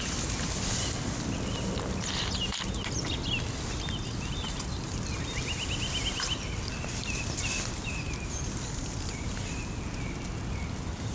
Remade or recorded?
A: recorded